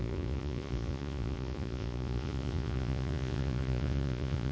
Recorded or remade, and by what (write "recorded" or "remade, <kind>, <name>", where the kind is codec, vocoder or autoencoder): remade, vocoder, Vocos